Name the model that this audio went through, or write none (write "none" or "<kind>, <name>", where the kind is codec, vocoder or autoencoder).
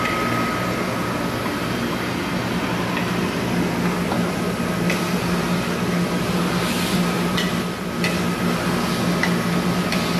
none